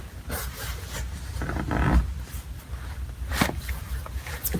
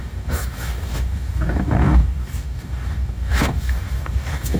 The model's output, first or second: second